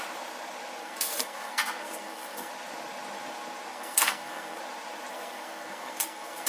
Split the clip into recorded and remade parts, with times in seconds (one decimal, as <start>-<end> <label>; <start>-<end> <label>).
0.0-0.8 recorded; 0.8-2.5 remade; 2.5-3.7 recorded; 3.7-4.6 remade; 4.6-5.1 recorded; 5.1-6.5 remade